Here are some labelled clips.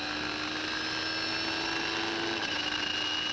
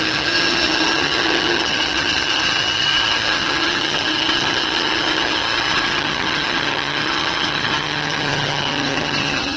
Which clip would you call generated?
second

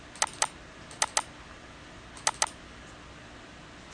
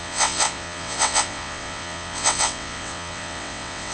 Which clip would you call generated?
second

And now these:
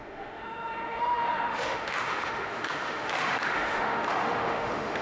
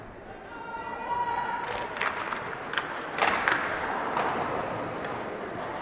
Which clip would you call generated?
first